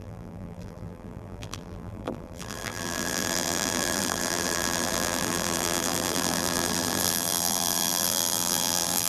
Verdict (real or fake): fake